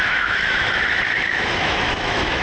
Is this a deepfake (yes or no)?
yes